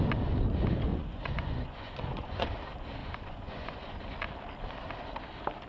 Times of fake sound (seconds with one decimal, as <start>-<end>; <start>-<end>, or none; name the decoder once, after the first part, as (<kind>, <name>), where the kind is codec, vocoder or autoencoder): 0.9-2.5 (vocoder, Vocos); 3.0-4.0